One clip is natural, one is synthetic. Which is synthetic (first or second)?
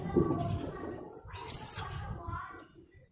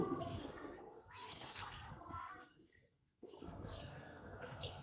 second